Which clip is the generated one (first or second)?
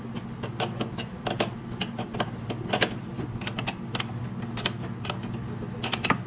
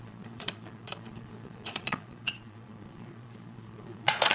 second